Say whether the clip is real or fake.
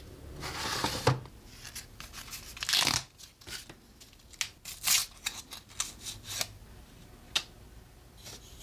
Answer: real